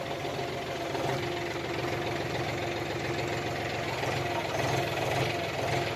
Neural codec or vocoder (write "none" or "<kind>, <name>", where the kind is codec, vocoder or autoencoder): none